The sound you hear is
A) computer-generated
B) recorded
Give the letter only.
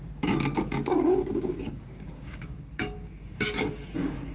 A